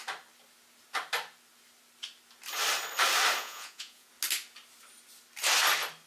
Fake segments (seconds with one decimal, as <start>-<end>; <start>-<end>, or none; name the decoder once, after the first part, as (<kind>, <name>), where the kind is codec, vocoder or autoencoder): 3.4-4.1 (vocoder, Vocos)